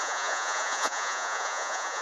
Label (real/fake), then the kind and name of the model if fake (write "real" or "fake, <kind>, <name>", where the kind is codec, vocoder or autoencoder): fake, vocoder, Vocos